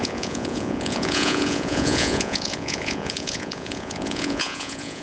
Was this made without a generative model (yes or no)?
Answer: no